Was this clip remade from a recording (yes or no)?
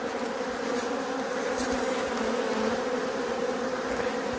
no